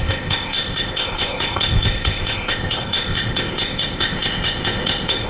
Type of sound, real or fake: fake